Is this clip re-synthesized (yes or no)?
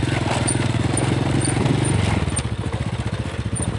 no